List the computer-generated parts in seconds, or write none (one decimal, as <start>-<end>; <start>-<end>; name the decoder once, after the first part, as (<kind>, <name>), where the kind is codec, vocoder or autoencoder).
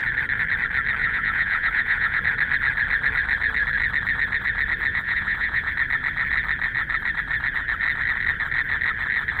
1.0-2.2 (vocoder, Vocos); 4.9-5.7